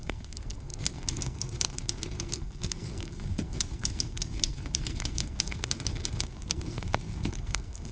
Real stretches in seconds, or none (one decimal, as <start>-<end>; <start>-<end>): none